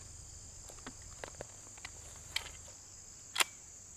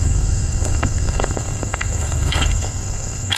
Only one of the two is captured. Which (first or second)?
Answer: first